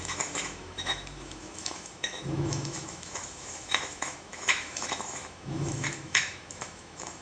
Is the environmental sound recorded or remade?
remade